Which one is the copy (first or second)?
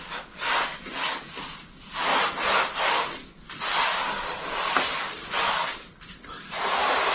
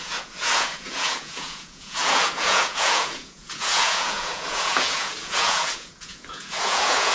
second